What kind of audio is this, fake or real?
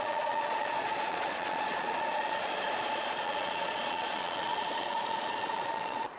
fake